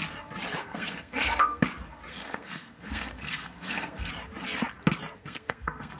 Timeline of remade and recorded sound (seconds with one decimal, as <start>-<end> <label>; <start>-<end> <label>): 0.0-0.6 recorded; 0.6-1.6 remade; 1.6-2.1 recorded; 2.1-4.1 remade; 4.1-5.2 recorded; 5.2-6.0 remade